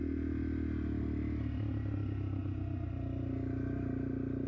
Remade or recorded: recorded